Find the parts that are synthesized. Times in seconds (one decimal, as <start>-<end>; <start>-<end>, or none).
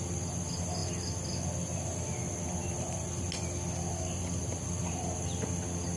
none